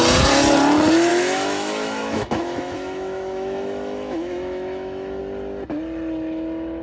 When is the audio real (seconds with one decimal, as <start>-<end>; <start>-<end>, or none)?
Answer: 0.0-1.1; 5.2-6.8